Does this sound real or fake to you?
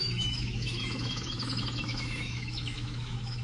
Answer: fake